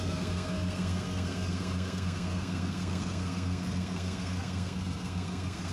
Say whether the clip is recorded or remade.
remade